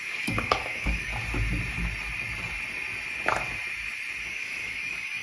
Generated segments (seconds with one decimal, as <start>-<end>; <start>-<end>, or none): 0.0-1.1; 4.2-5.2